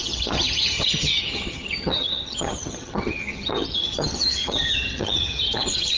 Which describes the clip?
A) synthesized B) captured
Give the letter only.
A